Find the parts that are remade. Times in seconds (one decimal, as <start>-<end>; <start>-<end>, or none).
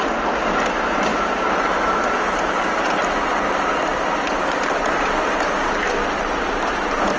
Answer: none